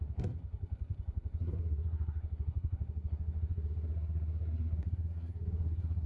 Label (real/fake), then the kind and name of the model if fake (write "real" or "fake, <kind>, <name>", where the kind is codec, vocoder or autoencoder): fake, codec, SNAC